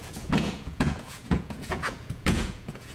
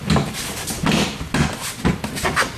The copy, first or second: first